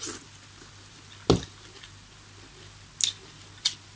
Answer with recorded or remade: recorded